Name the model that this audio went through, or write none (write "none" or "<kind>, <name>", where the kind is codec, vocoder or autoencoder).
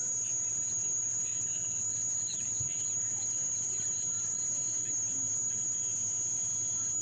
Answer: none